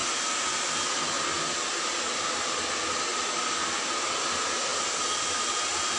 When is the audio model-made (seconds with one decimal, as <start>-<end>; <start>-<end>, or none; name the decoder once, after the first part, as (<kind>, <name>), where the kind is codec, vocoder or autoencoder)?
none